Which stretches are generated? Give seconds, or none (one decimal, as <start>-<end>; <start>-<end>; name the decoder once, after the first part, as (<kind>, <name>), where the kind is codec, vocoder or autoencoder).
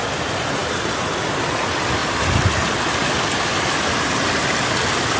none